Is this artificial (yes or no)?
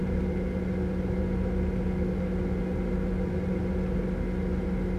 no